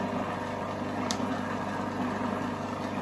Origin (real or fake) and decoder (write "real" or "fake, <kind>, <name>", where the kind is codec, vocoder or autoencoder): real